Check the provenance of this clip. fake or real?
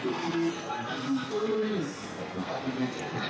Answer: fake